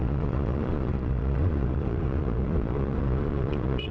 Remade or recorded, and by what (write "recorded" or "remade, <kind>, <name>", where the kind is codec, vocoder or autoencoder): remade, vocoder, Vocos